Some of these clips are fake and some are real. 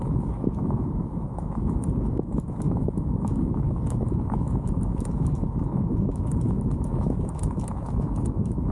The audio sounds fake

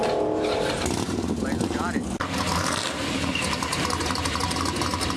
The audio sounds fake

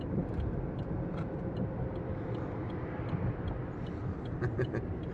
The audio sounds real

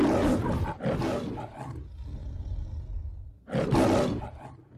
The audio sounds real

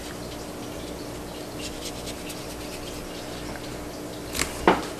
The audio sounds real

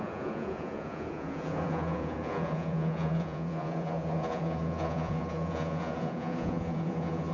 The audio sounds fake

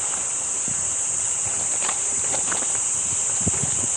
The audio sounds real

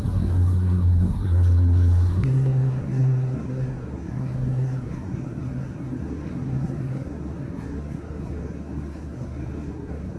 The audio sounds fake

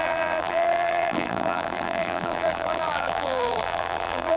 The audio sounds fake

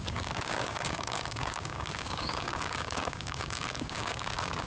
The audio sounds fake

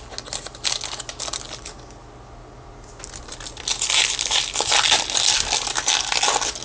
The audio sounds real